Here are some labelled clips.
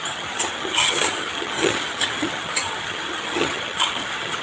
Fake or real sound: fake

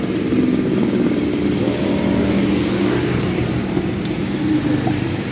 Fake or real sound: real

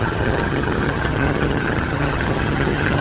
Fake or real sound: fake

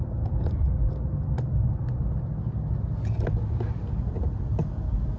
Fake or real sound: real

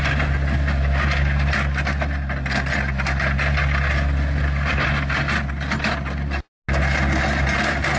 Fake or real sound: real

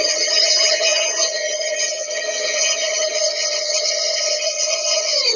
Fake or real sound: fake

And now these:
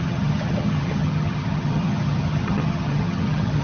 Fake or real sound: fake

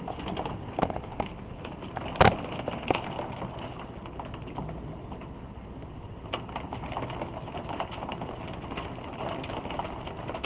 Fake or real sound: real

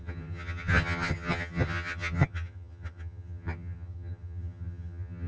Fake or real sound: fake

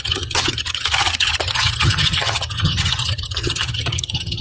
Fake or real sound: fake